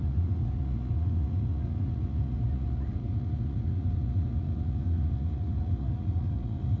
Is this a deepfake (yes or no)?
yes